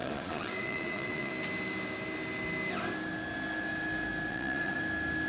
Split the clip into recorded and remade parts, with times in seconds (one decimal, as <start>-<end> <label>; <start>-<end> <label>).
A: 0.0-1.3 remade; 1.3-4.3 recorded; 4.3-4.8 remade; 4.8-5.3 recorded